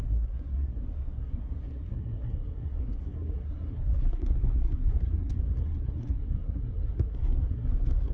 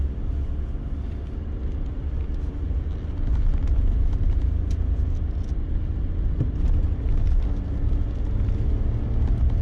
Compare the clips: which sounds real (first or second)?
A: second